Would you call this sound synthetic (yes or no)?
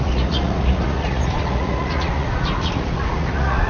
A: yes